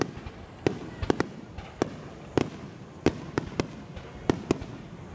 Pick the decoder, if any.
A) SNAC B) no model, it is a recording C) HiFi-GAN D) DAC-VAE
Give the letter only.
B